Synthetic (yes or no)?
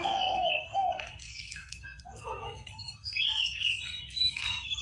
yes